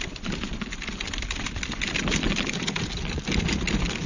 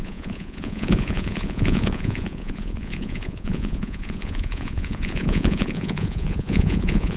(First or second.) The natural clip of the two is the first